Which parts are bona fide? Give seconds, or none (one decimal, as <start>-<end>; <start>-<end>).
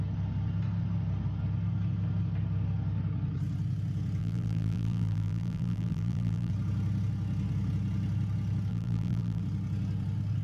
0.0-4.2; 6.5-8.7; 9.4-10.4